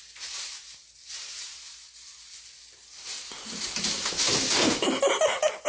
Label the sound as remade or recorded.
recorded